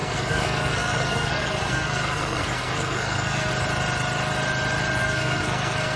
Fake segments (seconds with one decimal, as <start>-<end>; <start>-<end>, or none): 0.0-3.5; 5.0-6.0